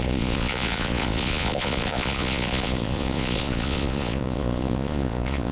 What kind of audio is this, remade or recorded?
remade